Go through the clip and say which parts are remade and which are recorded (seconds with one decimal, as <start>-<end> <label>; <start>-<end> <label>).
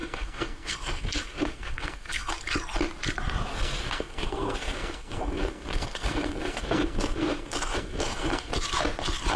0.0-2.3 remade; 2.3-3.5 recorded; 3.5-8.5 remade; 8.5-9.4 recorded